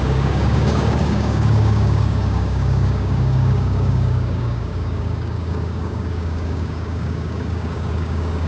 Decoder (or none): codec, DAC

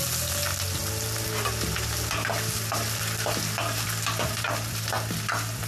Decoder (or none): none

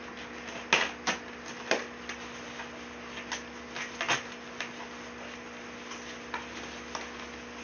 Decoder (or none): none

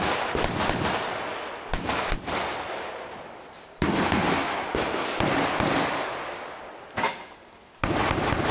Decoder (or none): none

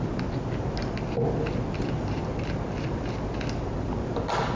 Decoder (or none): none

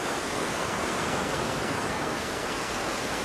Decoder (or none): codec, SNAC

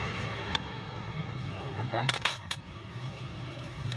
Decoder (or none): codec, SNAC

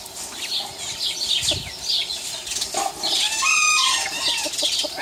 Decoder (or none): none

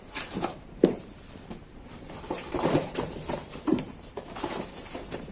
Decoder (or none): vocoder, BigVGAN v2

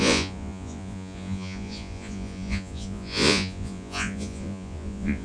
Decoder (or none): vocoder, Vocos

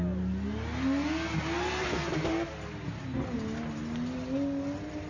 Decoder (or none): none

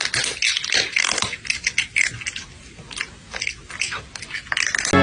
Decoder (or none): none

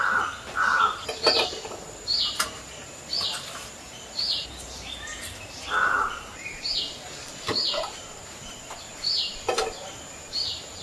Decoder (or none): vocoder, BigVGAN v2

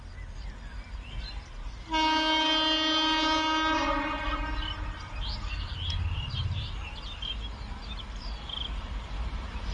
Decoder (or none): none